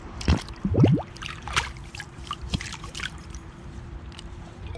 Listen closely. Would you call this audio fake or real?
fake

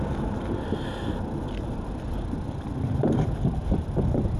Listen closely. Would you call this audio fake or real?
fake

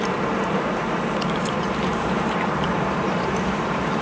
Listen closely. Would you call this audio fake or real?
fake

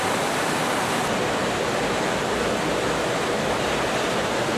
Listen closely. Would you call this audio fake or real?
real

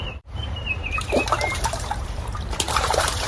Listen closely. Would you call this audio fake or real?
fake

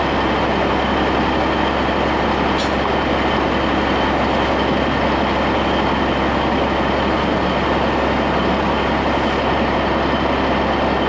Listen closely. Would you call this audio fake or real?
real